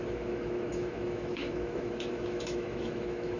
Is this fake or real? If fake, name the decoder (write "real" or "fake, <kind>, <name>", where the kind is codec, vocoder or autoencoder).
fake, autoencoder, DAC-VAE